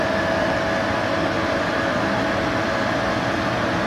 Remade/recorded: recorded